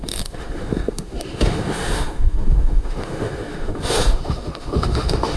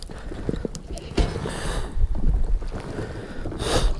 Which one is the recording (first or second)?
second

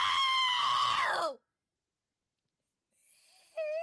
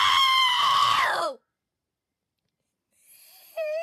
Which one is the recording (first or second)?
first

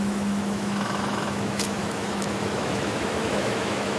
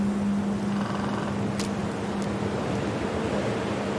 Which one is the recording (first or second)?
second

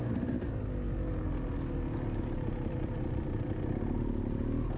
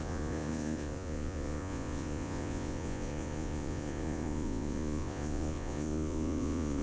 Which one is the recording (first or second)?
first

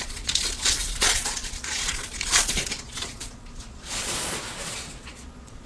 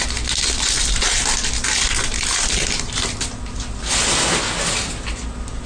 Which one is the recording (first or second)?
second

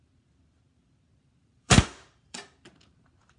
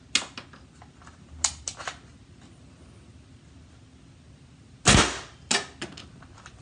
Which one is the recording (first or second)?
second